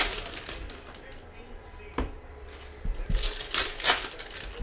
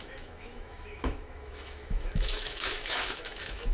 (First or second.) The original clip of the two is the first